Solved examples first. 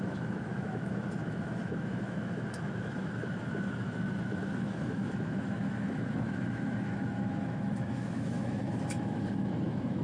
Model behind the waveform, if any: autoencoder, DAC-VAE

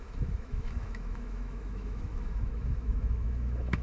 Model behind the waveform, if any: autoencoder, DAC-VAE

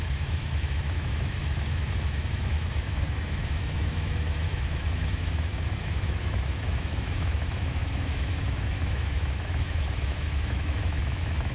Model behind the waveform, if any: autoencoder, DAC-VAE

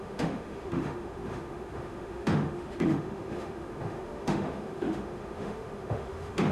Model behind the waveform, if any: autoencoder, DAC-VAE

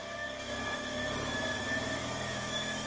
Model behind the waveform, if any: autoencoder, DAC-VAE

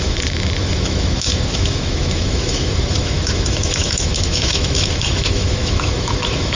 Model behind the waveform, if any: autoencoder, DAC-VAE